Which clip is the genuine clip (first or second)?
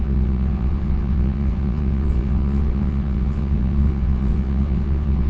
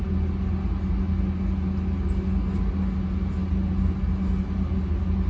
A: second